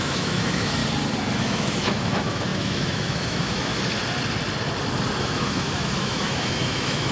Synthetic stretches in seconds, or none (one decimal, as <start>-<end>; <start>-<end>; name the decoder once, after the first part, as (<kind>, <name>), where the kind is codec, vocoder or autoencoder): 0.0-0.8 (autoencoder, DAC-VAE); 1.4-3.7; 5.2-7.1